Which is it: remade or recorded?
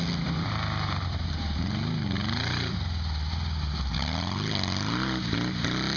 recorded